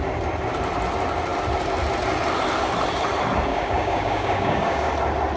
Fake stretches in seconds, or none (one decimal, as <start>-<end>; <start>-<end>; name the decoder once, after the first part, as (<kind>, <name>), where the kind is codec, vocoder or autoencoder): 3.5-4.9 (codec, DAC)